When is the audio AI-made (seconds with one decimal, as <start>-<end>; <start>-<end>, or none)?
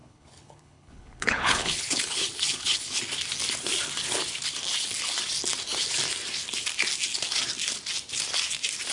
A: 0.0-3.0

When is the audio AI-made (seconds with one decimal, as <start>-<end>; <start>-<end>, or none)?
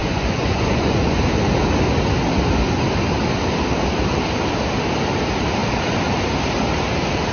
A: 0.0-1.2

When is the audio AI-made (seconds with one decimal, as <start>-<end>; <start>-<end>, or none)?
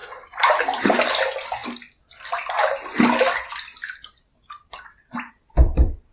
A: none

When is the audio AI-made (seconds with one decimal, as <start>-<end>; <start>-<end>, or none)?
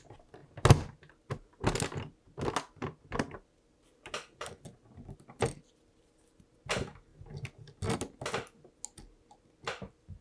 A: none